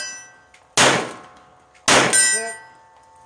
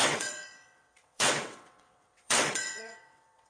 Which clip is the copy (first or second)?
second